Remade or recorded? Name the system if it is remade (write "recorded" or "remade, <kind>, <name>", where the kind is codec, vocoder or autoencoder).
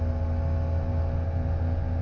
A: recorded